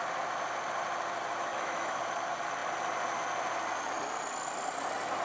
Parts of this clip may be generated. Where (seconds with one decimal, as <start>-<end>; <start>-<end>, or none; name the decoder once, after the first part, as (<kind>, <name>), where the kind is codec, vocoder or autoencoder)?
1.5-2.0 (autoencoder, DAC-VAE)